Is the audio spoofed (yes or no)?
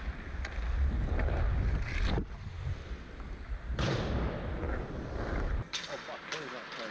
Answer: no